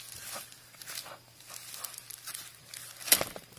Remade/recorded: recorded